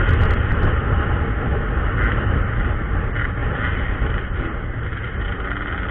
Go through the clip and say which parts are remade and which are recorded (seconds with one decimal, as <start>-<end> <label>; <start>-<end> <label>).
0.0-3.4 recorded; 3.4-4.4 remade; 4.4-5.9 recorded